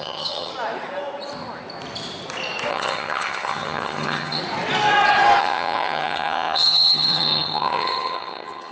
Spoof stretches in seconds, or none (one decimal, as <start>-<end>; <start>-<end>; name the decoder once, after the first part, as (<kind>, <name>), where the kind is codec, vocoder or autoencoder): 0.0-0.5 (vocoder, HiFi-GAN); 2.7-4.4; 5.4-8.7

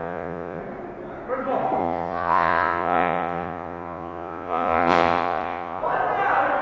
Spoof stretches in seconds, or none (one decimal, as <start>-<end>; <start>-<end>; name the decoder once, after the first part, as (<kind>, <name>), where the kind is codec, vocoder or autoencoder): 0.0-0.6 (vocoder, Vocos); 1.8-5.8

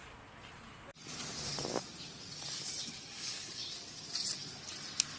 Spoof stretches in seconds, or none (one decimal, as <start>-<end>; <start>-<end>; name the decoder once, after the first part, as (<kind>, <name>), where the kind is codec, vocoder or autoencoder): 3.1-3.6 (codec, DAC)